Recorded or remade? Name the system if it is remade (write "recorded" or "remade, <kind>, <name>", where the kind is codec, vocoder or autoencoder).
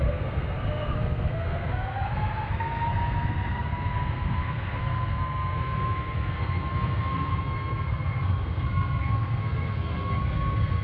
remade, codec, SNAC